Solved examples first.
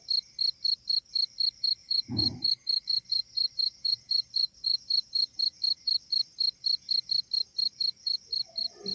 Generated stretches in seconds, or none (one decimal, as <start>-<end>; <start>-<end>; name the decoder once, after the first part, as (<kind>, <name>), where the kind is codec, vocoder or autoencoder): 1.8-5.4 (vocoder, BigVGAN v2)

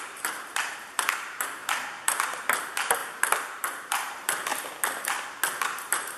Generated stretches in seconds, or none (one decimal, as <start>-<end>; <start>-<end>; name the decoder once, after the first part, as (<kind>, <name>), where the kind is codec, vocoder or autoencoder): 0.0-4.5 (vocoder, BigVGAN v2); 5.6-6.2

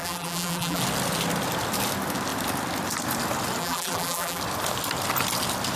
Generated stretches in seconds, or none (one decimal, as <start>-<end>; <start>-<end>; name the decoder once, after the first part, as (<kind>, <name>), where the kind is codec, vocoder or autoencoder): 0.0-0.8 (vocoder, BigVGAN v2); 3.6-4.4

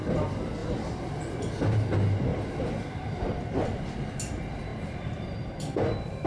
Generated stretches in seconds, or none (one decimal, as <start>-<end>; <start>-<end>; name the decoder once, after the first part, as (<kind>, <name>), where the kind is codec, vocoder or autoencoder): 2.3-4.1 (vocoder, BigVGAN v2); 4.7-5.6